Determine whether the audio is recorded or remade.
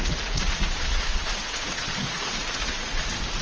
remade